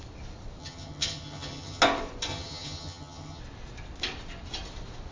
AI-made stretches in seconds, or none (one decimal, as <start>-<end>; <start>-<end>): 0.6-1.8; 2.3-3.4